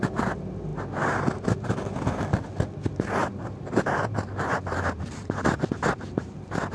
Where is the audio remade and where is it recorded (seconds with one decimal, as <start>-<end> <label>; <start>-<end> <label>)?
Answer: 0.0-3.2 recorded; 3.2-6.7 remade